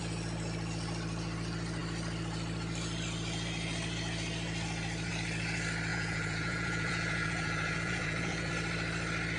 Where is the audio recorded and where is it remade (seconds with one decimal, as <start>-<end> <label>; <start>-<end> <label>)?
0.0-5.9 recorded; 5.9-8.5 remade; 8.5-9.4 recorded